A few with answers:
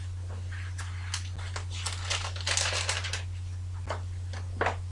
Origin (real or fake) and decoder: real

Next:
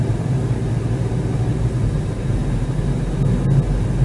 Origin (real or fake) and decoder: real